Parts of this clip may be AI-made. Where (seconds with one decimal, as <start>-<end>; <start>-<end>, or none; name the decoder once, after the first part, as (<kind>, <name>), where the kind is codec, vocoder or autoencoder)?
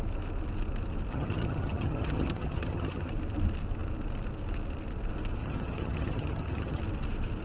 1.1-3.1 (vocoder, HiFi-GAN); 5.4-6.8